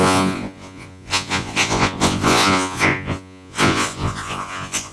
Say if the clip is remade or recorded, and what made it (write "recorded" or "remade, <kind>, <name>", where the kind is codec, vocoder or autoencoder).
remade, vocoder, Vocos